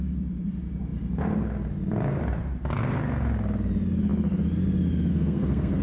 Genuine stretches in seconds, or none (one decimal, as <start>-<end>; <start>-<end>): 0.0-5.1